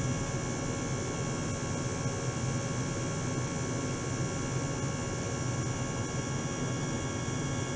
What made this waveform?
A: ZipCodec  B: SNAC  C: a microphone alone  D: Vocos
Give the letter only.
C